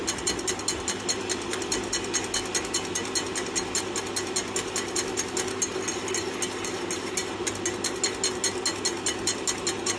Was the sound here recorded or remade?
recorded